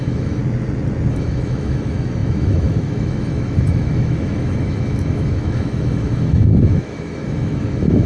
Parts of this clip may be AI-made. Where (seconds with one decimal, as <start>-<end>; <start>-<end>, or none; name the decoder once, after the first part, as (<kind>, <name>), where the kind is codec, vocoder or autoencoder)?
0.0-0.4 (autoencoder, DAC-VAE); 1.1-8.1